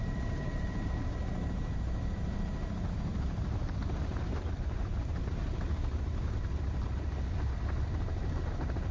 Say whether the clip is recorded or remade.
remade